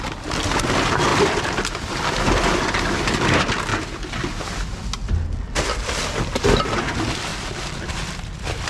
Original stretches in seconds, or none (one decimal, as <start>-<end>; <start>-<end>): 0.0-1.1; 2.8-7.3